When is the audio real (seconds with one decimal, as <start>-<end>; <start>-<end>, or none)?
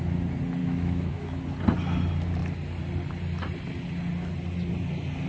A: 0.0-0.6; 1.4-5.3